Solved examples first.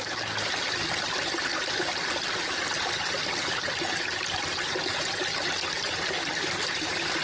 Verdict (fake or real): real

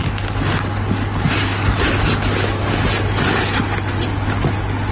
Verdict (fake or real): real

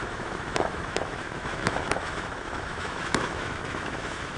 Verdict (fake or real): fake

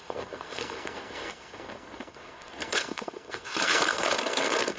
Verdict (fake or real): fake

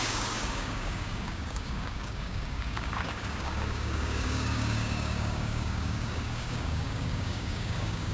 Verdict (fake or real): fake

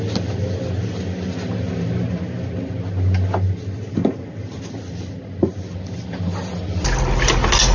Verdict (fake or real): real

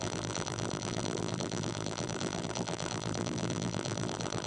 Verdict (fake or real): fake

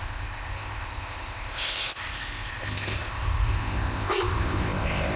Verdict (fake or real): fake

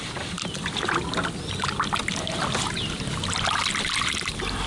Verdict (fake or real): real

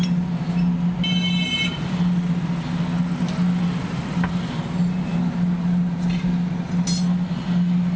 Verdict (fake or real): real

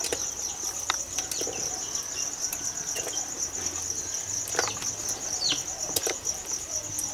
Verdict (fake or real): real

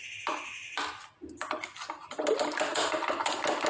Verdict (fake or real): real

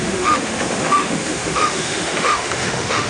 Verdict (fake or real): fake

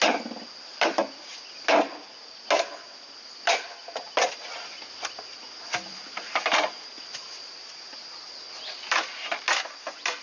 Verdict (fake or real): real